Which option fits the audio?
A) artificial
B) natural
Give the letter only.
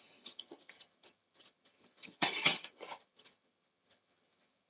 A